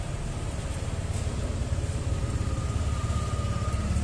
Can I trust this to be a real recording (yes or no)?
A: yes